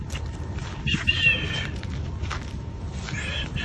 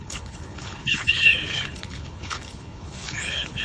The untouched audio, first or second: first